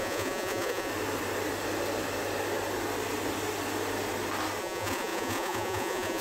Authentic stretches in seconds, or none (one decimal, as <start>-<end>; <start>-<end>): 0.9-4.6